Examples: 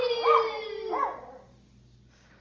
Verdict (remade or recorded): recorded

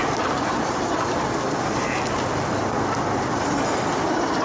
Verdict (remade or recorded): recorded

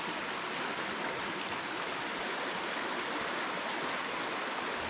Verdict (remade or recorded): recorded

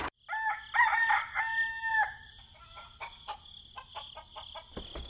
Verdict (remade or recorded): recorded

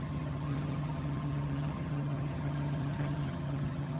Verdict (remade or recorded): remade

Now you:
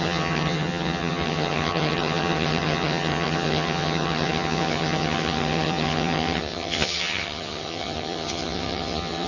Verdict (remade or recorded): remade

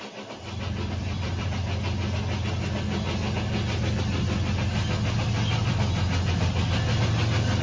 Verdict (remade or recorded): recorded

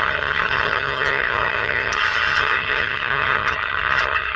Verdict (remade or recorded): remade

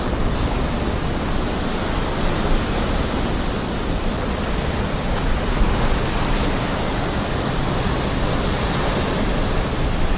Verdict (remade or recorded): recorded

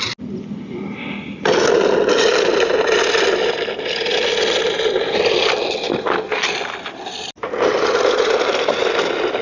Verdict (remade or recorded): recorded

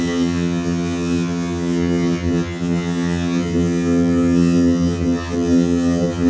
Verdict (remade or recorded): remade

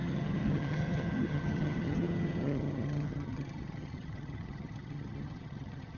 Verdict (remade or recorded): remade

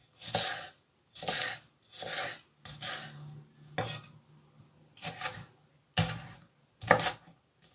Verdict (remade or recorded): recorded